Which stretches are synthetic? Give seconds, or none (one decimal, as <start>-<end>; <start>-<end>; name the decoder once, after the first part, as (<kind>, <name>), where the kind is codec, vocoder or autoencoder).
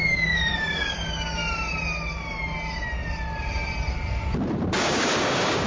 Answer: 0.0-1.4 (codec, DAC); 4.8-5.7